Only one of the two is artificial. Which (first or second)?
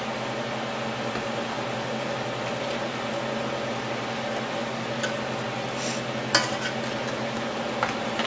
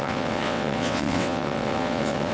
second